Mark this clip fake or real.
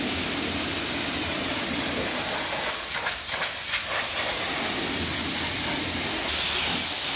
real